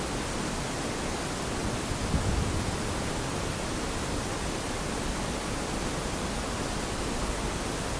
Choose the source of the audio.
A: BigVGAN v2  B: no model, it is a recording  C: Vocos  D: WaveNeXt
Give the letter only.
A